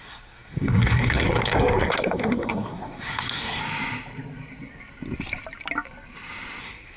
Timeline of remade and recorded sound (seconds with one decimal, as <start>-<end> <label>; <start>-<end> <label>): 0.0-3.6 remade; 3.6-6.6 recorded; 6.6-7.0 remade